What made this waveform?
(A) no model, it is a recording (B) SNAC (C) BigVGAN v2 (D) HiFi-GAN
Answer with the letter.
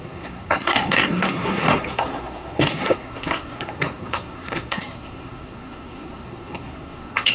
B